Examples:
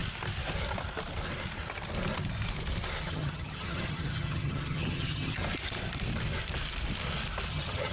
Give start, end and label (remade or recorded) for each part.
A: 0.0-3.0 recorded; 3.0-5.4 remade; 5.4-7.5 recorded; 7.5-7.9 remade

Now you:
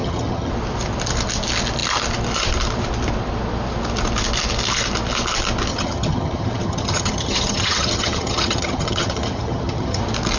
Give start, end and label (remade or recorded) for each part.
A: 0.0-0.5 remade; 0.5-5.7 recorded; 5.7-10.0 remade; 10.0-10.4 recorded

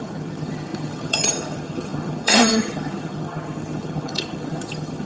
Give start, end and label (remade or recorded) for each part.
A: 0.0-5.1 remade